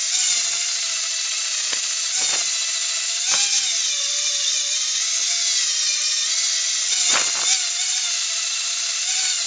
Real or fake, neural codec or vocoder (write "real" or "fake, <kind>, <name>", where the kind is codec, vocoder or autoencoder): real